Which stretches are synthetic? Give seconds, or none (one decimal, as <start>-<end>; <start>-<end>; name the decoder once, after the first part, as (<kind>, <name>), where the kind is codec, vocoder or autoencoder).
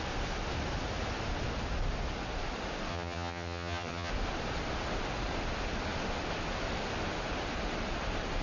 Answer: 2.9-4.1 (vocoder, HiFi-GAN)